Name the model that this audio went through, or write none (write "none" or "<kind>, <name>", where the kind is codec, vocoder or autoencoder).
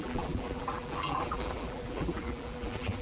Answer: vocoder, BigVGAN v2